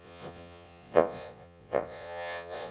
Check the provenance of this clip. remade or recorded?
remade